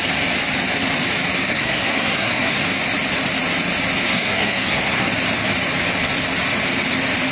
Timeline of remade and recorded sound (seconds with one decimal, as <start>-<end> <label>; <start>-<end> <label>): 0.0-1.5 recorded; 1.5-2.6 remade; 2.6-4.1 recorded; 4.1-5.1 remade; 5.1-7.3 recorded